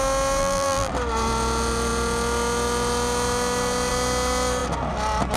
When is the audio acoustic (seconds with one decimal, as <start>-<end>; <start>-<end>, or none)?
0.0-0.4; 0.9-5.4